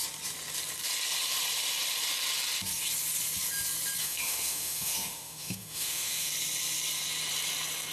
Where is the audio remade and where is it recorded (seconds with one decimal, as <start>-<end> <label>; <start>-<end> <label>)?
0.0-4.0 recorded; 4.0-6.3 remade; 6.3-7.9 recorded